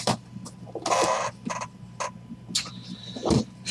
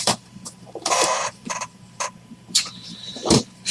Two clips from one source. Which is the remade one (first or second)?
second